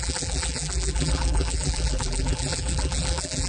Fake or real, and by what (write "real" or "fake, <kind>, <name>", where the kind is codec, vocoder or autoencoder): fake, vocoder, BigVGAN v2